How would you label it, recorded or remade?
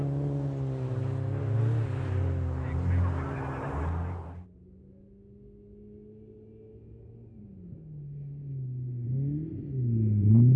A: recorded